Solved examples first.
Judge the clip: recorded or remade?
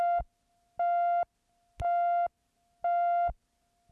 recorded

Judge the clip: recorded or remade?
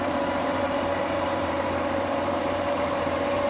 remade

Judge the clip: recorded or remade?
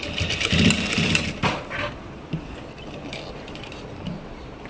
remade